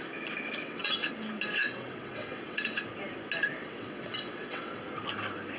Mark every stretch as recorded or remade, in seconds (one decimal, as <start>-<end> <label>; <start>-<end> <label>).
0.0-0.6 recorded; 0.6-1.1 remade; 1.1-1.6 recorded; 1.6-2.8 remade; 2.8-3.6 recorded; 3.6-4.8 remade; 4.8-5.6 recorded